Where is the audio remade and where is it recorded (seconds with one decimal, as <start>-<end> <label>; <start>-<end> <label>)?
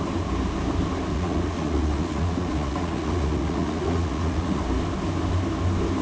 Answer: 0.0-1.1 recorded; 1.1-4.6 remade; 4.6-6.0 recorded